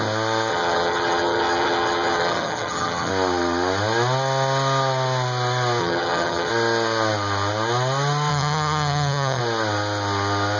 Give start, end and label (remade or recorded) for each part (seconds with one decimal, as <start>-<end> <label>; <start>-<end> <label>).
0.0-0.5 recorded; 0.5-3.1 remade; 3.1-5.8 recorded; 5.8-6.5 remade; 6.5-8.3 recorded; 8.3-9.4 remade; 9.4-10.6 recorded